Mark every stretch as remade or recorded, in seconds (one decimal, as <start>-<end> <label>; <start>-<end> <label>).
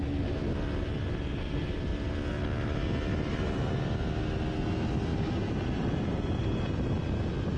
0.0-5.1 recorded; 5.1-6.5 remade; 6.5-7.6 recorded